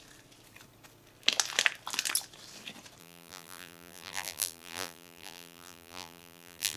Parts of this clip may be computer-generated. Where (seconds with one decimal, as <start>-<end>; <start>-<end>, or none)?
3.0-6.8